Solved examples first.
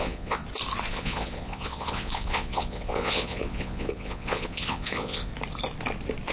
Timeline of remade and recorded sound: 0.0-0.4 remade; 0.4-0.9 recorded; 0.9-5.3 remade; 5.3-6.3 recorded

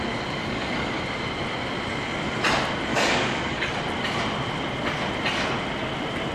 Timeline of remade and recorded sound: 0.0-0.4 recorded; 0.4-1.0 remade; 1.0-2.9 recorded; 2.9-3.7 remade; 3.7-6.3 recorded